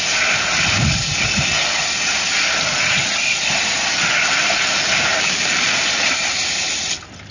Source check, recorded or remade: recorded